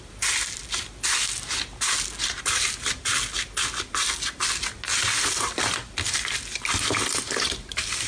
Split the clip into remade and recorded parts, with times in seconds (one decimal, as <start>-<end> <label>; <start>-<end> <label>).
0.0-8.1 recorded